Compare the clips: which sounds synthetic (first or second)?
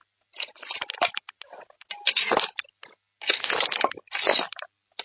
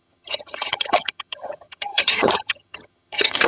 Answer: second